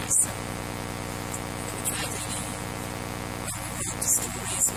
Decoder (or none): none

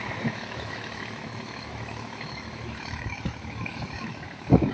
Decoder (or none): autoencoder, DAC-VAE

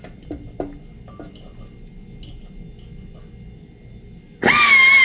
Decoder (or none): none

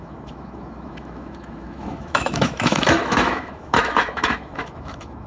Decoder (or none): autoencoder, DAC-VAE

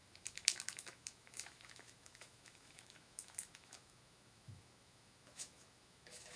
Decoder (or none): autoencoder, DAC-VAE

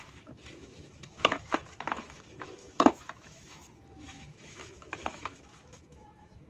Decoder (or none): autoencoder, DAC-VAE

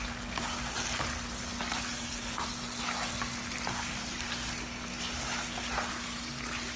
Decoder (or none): none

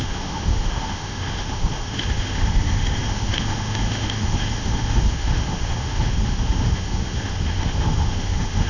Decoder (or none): autoencoder, DAC-VAE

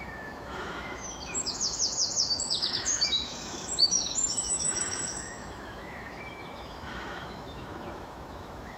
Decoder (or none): autoencoder, DAC-VAE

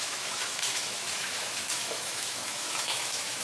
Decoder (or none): autoencoder, DAC-VAE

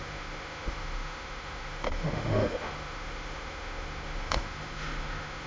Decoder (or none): autoencoder, DAC-VAE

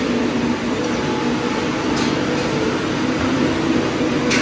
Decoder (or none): none